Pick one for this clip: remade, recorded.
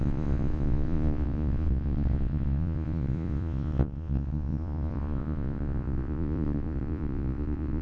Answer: remade